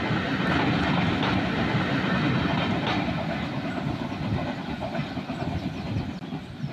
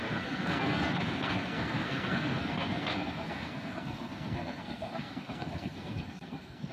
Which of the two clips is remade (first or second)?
second